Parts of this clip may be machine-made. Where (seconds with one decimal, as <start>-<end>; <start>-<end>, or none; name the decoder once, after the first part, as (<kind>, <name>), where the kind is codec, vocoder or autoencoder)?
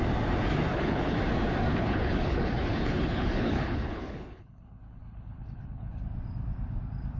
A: 0.7-1.2 (codec, HILCodec); 1.7-6.0